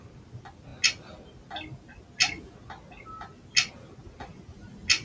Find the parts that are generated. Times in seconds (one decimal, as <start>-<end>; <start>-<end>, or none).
none